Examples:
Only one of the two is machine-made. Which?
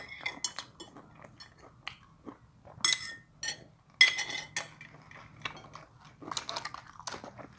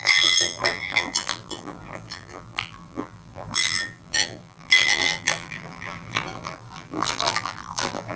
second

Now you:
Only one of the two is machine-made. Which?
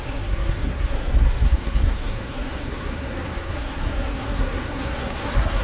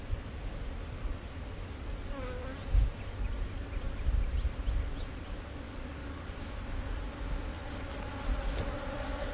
first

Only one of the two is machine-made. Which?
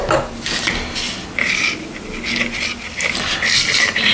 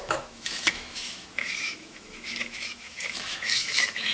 second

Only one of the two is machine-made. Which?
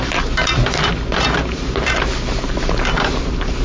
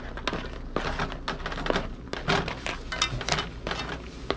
first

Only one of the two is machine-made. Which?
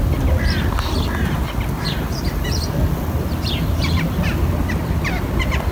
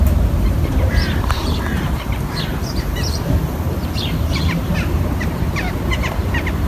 second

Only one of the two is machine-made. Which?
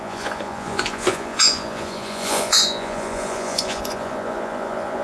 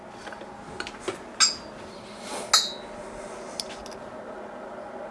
first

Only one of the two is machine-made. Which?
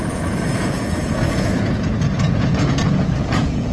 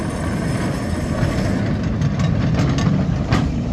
first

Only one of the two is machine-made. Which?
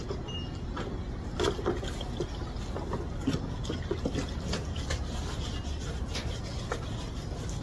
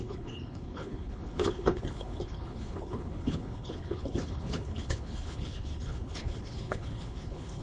second